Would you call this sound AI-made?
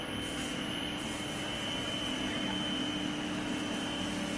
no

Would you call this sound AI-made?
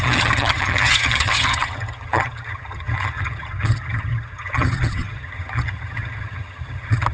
yes